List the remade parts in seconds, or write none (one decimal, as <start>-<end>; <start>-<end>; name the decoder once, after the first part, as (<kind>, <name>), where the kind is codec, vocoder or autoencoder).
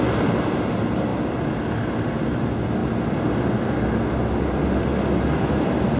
none